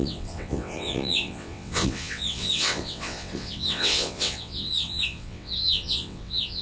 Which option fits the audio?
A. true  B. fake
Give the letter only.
B